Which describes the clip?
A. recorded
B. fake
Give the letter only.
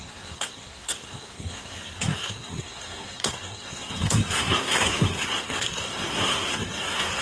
B